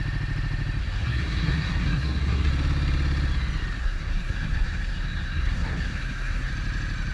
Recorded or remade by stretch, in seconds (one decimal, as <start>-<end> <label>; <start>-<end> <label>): 0.0-0.8 recorded; 0.8-2.5 remade; 2.5-3.8 recorded; 3.8-6.5 remade; 6.5-7.1 recorded